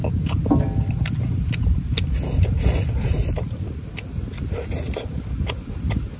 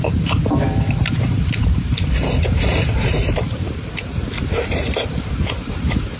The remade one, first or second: second